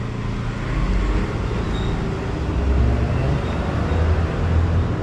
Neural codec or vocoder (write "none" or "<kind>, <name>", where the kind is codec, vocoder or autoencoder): none